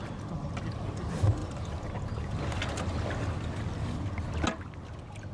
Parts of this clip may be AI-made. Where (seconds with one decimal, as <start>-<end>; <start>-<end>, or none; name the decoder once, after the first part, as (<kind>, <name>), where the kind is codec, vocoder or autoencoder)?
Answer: none